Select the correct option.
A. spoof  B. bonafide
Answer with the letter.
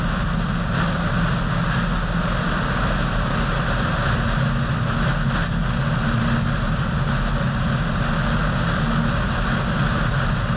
B